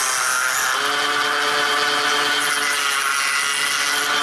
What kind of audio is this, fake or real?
real